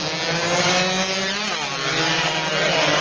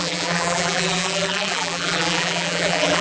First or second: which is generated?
second